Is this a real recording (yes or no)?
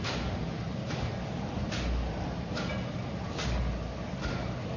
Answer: yes